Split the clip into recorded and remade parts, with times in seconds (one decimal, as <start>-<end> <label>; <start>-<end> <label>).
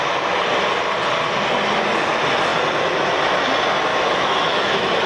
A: 0.0-3.9 recorded; 3.9-5.1 remade